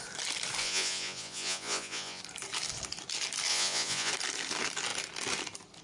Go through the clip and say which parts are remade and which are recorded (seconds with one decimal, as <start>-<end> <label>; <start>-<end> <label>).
0.0-0.6 recorded; 0.6-2.2 remade; 2.2-3.5 recorded; 3.5-4.1 remade; 4.1-5.8 recorded